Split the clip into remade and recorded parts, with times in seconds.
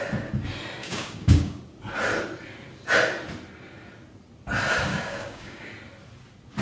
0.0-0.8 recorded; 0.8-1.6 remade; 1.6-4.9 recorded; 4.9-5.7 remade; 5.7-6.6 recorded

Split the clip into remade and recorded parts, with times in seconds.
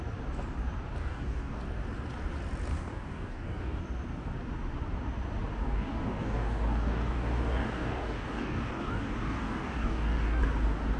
0.0-1.0 recorded; 1.0-1.6 remade; 1.6-2.7 recorded; 2.7-3.8 remade; 3.8-5.6 recorded; 5.6-10.4 remade; 10.4-11.0 recorded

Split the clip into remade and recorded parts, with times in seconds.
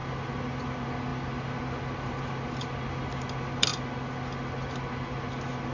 0.0-5.7 recorded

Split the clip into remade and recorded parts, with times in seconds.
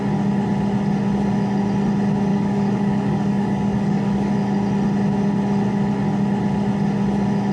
0.0-2.3 recorded; 2.3-4.3 remade; 4.3-7.5 recorded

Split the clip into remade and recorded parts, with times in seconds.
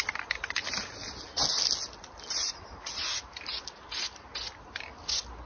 0.0-5.5 recorded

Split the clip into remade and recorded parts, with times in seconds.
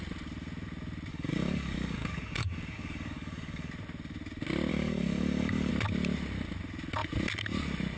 0.0-1.1 recorded; 1.1-3.7 remade; 3.7-4.7 recorded; 4.7-5.7 remade; 5.7-8.0 recorded